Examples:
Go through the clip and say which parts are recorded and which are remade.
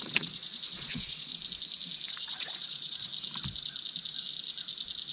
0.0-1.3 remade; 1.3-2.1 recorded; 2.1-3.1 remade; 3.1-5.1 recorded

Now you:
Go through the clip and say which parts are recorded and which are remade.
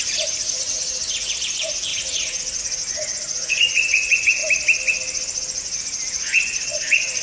0.0-4.4 remade; 4.4-5.6 recorded; 5.6-7.2 remade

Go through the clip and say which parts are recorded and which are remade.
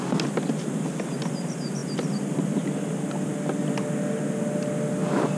0.0-5.4 recorded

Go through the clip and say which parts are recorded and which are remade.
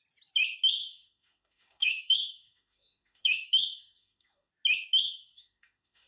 0.0-0.8 recorded; 0.8-4.5 remade; 4.5-5.0 recorded; 5.0-6.1 remade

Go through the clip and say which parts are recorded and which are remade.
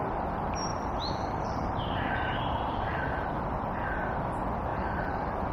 0.0-0.7 recorded; 0.7-3.4 remade; 3.4-4.7 recorded; 4.7-5.5 remade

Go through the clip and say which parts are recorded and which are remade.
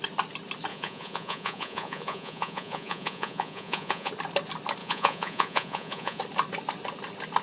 0.0-0.7 recorded; 0.7-4.1 remade; 4.1-4.8 recorded; 4.8-6.2 remade; 6.2-7.4 recorded